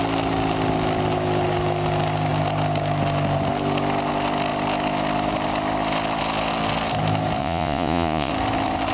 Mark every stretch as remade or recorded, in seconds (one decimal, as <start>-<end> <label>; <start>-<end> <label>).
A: 0.0-7.4 recorded; 7.4-8.3 remade; 8.3-8.9 recorded